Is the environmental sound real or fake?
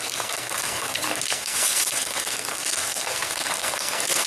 fake